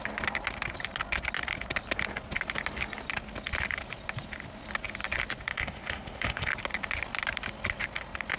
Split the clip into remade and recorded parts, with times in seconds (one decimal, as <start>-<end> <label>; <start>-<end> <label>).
0.0-5.5 recorded; 5.5-6.5 remade; 6.5-8.4 recorded